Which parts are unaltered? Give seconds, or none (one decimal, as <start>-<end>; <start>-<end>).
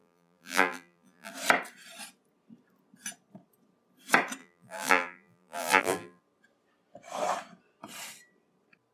1.3-4.4; 6.2-8.9